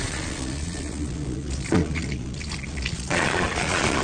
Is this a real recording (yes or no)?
no